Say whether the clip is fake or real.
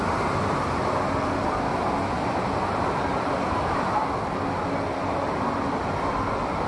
real